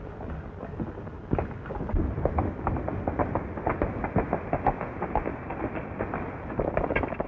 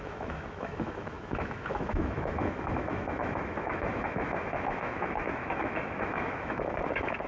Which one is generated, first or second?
second